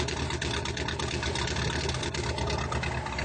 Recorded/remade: recorded